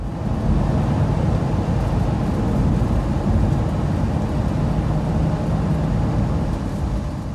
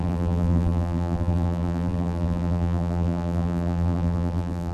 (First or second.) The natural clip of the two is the first